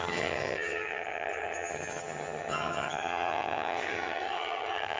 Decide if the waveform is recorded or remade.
remade